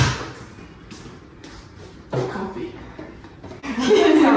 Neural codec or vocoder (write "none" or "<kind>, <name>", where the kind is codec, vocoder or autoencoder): none